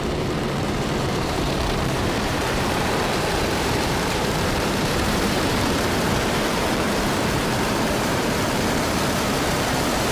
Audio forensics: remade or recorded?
remade